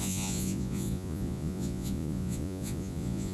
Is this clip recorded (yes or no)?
no